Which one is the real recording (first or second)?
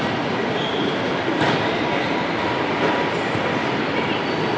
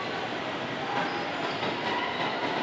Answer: second